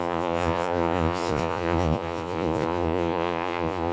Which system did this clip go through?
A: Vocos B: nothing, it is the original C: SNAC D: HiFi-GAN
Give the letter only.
A